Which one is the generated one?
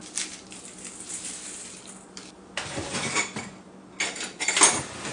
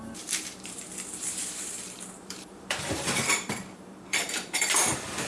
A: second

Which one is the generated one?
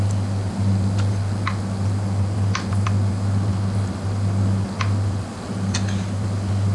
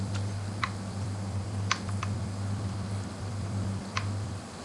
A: second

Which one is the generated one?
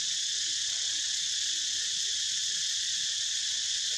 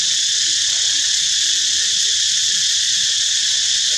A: first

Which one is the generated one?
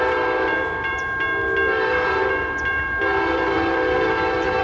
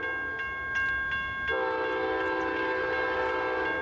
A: first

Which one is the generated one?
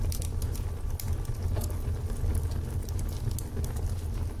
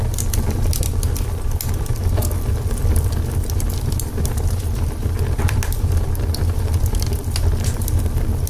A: second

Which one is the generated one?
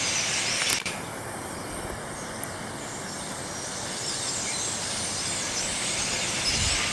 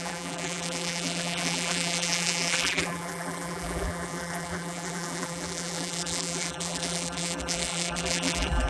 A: second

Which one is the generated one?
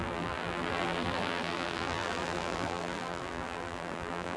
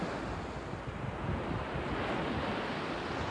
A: first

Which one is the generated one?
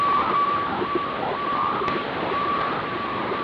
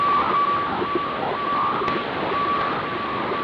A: first